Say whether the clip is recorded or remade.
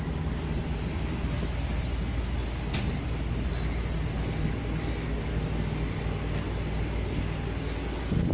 recorded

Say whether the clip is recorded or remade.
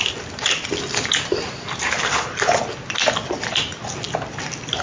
recorded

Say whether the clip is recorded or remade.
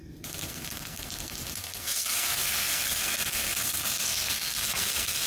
remade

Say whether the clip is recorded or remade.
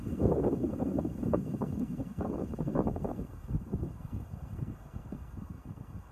remade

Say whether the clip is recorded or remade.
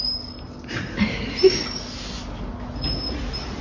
recorded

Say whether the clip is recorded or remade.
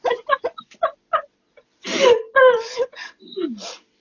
recorded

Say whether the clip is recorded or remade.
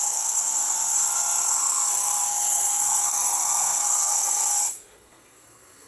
remade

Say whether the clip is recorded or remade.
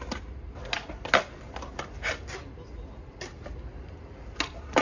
recorded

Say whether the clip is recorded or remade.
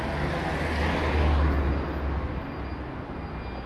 recorded